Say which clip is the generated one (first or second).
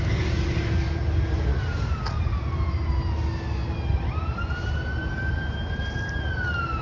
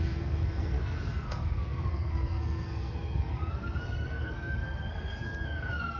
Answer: second